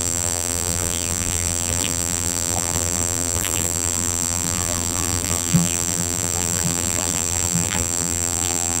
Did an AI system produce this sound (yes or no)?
yes